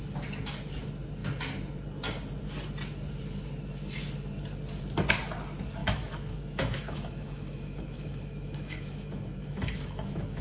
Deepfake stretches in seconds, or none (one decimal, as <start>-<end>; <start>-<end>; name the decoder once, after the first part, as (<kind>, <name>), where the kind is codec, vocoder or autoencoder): 5.8-10.4 (autoencoder, DAC-VAE)